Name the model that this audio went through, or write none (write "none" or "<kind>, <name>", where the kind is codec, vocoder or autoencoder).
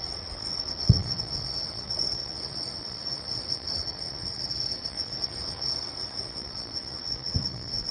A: vocoder, WaveNeXt